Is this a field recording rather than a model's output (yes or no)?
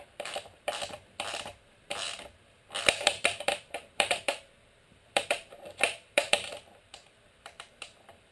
no